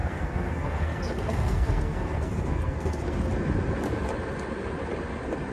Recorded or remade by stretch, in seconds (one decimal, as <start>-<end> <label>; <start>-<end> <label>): 0.0-3.3 remade; 3.3-5.5 recorded